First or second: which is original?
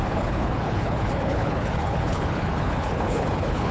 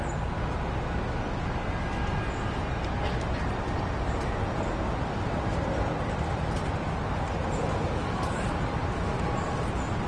second